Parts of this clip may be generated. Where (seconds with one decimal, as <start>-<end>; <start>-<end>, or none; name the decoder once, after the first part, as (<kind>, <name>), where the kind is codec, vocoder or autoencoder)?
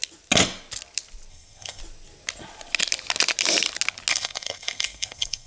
1.3-1.8 (codec, SNAC); 4.1-5.5